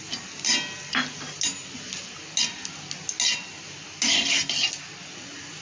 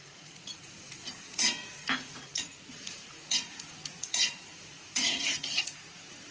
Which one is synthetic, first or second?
second